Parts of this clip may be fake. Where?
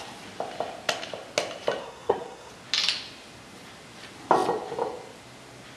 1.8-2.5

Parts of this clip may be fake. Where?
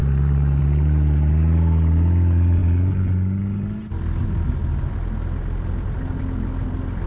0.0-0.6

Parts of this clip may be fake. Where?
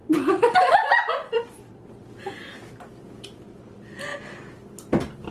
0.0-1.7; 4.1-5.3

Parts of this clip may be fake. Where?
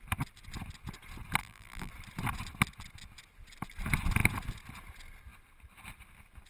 1.4-1.9